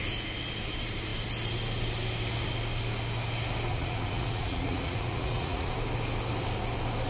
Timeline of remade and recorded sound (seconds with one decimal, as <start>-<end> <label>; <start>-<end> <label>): 0.0-3.7 recorded; 3.7-5.7 remade; 5.7-7.1 recorded